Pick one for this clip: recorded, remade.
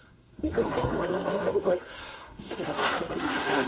remade